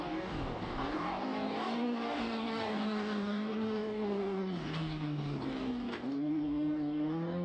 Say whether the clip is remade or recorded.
remade